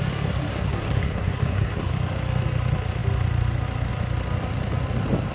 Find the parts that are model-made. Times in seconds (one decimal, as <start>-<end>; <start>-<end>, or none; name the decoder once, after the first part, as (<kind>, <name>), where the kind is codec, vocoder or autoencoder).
0.5-1.9 (codec, SNAC)